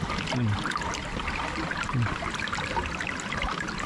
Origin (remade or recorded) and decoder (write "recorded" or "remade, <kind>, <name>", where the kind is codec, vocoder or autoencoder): recorded